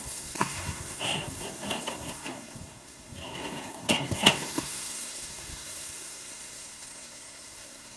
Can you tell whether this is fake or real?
fake